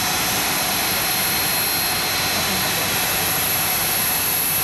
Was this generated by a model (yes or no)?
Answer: no